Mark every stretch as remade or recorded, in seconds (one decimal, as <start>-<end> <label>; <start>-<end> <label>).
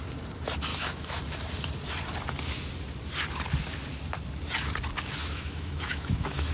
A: 0.0-0.7 recorded; 0.7-1.2 remade; 1.2-5.2 recorded; 5.2-6.5 remade